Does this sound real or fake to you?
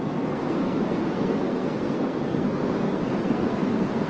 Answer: fake